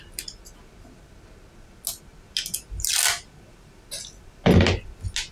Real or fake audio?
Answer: real